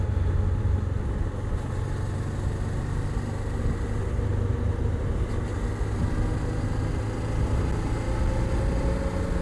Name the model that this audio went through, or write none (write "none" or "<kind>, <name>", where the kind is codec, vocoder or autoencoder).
none